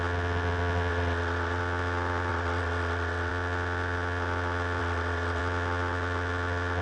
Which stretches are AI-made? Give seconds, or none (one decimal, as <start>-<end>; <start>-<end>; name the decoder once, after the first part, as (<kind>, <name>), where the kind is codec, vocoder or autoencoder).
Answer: 0.9-1.6 (vocoder, WaveNeXt); 2.3-3.3; 4.8-5.4